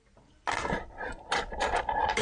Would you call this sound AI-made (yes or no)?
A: no